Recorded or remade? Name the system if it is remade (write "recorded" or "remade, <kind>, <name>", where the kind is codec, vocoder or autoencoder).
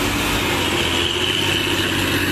recorded